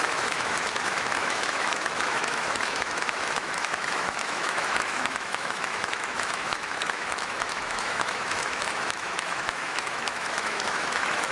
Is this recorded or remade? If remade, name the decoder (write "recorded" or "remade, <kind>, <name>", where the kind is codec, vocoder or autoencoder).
remade, autoencoder, DAC-VAE